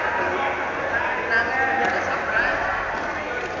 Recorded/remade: recorded